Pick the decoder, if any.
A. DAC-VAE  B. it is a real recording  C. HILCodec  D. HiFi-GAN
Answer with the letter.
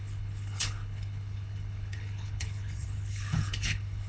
C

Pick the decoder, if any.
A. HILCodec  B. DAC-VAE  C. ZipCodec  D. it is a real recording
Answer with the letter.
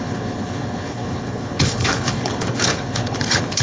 A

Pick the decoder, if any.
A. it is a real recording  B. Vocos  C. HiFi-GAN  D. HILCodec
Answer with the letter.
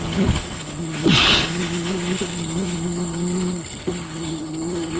D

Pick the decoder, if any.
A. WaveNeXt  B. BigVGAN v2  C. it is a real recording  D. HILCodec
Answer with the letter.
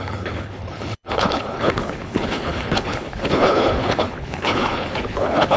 D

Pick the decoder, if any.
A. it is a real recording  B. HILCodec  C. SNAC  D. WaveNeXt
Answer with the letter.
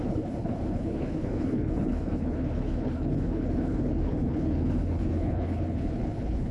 B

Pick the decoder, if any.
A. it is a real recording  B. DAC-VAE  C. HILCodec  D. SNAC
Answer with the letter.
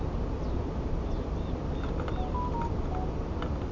A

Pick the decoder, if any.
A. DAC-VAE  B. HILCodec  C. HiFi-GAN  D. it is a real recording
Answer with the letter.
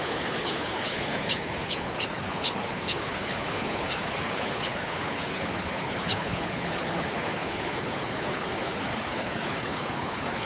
B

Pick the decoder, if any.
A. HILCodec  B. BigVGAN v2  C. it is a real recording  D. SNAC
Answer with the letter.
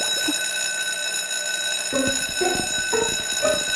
C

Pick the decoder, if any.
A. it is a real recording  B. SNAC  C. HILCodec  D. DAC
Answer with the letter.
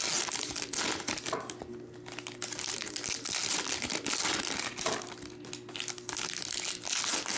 A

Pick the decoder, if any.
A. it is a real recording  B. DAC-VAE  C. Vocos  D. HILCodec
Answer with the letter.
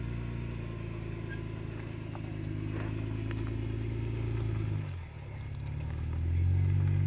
A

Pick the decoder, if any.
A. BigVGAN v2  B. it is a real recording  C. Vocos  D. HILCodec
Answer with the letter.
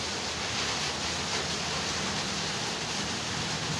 B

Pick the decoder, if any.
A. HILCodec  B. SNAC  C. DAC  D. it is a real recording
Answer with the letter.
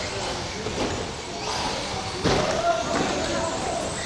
D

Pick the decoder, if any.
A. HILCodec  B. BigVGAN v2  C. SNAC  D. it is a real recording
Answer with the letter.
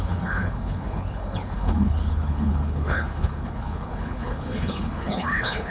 A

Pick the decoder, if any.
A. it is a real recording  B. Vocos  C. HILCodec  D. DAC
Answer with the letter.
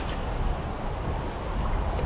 A